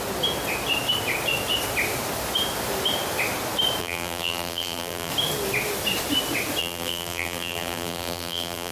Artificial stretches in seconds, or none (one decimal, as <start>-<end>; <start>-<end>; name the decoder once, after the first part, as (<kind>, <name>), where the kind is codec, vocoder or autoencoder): 3.8-5.1 (vocoder, BigVGAN v2); 6.6-8.7